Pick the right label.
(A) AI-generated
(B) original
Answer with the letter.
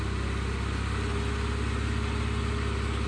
B